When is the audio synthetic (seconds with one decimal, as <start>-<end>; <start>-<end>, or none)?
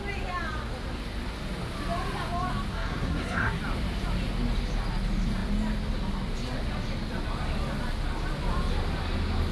2.7-3.6